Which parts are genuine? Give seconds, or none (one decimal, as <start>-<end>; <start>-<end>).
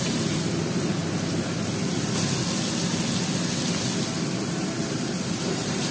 1.0-4.2